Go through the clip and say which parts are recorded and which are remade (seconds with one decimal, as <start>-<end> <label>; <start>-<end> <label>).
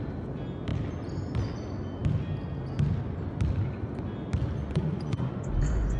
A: 0.0-4.6 recorded; 4.6-6.0 remade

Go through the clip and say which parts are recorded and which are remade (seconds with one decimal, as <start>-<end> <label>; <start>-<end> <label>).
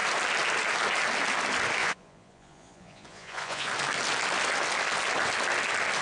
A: 0.0-1.8 recorded; 1.8-3.7 remade; 3.7-6.0 recorded